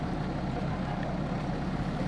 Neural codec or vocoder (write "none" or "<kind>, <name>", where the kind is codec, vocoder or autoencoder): none